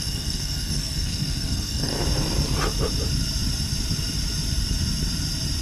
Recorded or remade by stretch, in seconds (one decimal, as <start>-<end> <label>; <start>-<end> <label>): 0.0-1.9 remade; 1.9-5.6 recorded